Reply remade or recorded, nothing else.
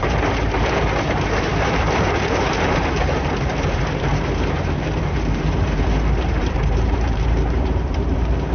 remade